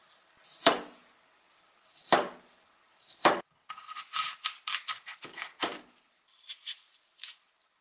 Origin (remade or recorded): recorded